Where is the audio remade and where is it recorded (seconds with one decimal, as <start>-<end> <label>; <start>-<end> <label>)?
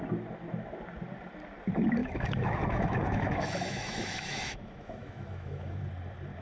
0.0-2.0 recorded; 2.0-5.8 remade; 5.8-6.4 recorded